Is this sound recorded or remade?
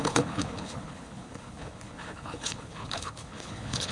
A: remade